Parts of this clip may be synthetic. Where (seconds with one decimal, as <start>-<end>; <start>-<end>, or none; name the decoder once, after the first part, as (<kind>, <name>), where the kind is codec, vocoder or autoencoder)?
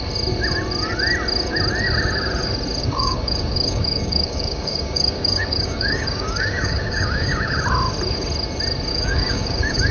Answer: 2.8-7.6 (codec, DAC); 8.9-9.9